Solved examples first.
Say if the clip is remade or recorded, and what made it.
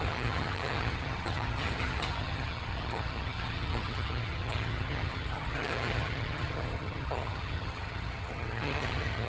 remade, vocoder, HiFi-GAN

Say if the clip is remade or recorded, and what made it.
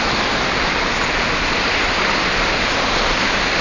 recorded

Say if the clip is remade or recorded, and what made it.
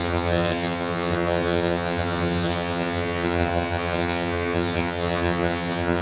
remade, vocoder, HiFi-GAN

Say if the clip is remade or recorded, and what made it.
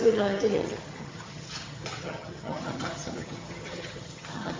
remade, vocoder, HiFi-GAN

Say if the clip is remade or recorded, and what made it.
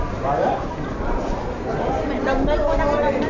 recorded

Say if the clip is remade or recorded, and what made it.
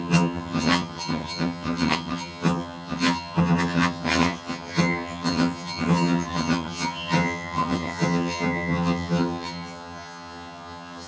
remade, vocoder, HiFi-GAN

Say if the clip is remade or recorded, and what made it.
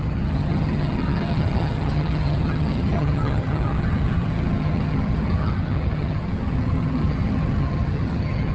remade, vocoder, HiFi-GAN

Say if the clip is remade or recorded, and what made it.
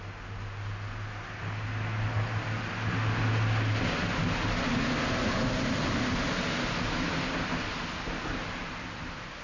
recorded